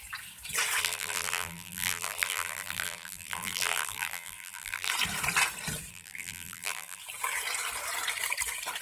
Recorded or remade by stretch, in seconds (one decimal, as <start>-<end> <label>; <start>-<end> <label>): 0.0-0.8 recorded; 0.8-4.9 remade; 4.9-5.9 recorded; 5.9-7.0 remade; 7.0-8.8 recorded